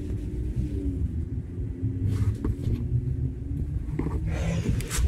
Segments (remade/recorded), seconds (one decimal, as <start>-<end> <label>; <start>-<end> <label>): 0.0-5.1 recorded